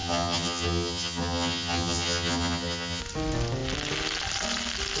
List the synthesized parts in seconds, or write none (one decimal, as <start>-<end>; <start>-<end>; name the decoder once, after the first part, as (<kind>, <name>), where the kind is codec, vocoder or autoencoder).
0.0-3.0 (vocoder, HiFi-GAN)